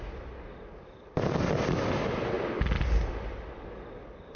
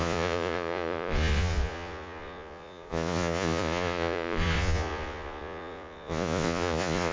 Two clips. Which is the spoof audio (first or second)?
second